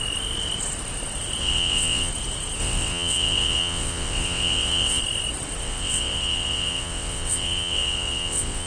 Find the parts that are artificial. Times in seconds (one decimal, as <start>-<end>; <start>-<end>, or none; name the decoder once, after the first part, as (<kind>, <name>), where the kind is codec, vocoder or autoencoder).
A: 1.4-2.1 (vocoder, WaveNeXt); 2.6-5.0; 5.6-8.7